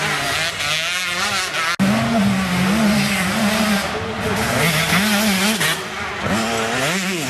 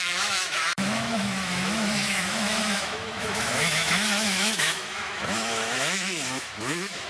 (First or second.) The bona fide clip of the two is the first